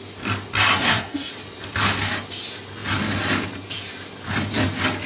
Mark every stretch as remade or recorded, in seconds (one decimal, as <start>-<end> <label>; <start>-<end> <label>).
0.0-0.7 recorded; 0.7-1.3 remade; 1.3-5.1 recorded